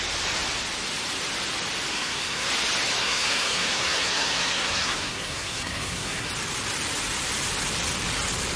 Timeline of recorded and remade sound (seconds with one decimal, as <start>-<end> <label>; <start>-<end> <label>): 0.0-1.9 recorded; 1.9-2.5 remade; 2.5-3.0 recorded; 3.0-6.3 remade; 6.3-8.6 recorded